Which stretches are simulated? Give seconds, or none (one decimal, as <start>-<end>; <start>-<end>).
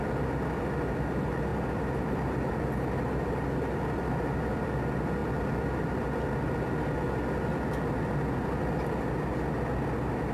none